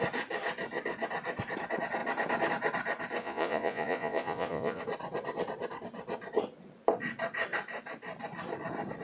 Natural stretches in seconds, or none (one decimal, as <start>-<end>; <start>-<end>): 0.0-3.2; 4.8-9.0